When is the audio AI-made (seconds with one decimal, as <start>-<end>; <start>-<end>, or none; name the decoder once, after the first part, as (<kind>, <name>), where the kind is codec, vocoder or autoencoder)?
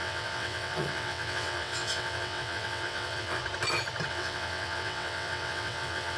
0.0-3.4 (vocoder, WaveNeXt); 4.1-6.2